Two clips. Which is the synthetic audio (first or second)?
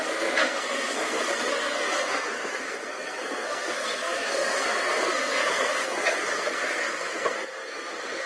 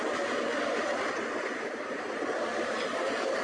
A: first